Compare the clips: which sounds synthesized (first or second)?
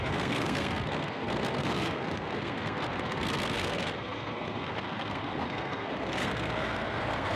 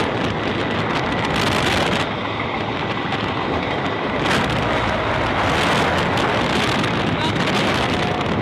first